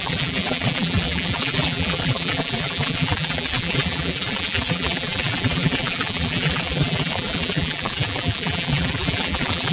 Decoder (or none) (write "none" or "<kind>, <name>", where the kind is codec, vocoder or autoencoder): vocoder, BigVGAN v2